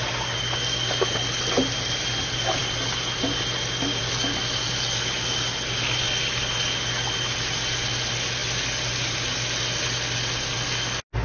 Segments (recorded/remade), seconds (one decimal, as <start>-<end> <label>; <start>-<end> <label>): 0.0-11.2 recorded